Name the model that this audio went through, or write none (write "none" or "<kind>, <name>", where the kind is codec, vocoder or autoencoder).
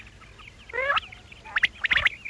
none